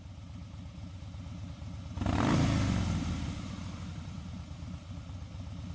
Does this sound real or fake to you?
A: real